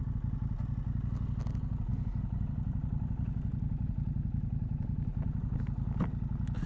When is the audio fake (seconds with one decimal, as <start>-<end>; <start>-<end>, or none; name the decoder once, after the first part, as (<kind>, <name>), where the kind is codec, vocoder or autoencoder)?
1.9-5.6 (vocoder, BigVGAN v2)